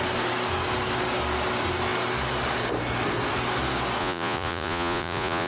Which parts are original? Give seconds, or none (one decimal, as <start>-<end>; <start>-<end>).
0.0-4.0